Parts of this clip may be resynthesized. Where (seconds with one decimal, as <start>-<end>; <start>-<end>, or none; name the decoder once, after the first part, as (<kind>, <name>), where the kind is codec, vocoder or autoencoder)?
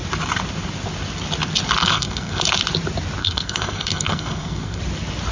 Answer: 1.8-2.4 (codec, SNAC); 3.2-4.8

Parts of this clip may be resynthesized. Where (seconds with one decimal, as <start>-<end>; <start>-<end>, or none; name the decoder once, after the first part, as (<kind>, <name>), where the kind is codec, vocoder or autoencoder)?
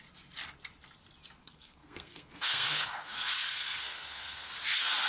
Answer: 1.4-4.5 (codec, SNAC)